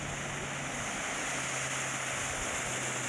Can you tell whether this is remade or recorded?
recorded